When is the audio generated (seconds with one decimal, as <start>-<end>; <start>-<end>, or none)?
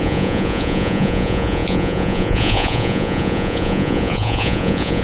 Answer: 0.0-5.0